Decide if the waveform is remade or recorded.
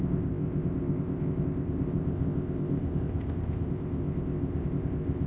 remade